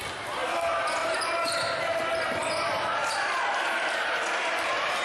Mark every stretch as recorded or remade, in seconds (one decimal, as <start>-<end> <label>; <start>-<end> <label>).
0.0-1.9 recorded; 1.9-5.0 remade